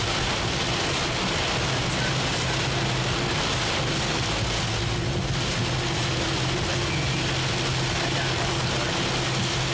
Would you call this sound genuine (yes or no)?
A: yes